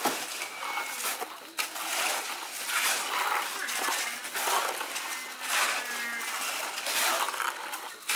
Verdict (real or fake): real